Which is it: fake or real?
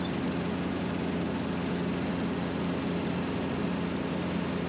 real